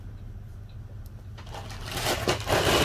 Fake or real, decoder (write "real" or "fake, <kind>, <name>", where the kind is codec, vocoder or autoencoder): real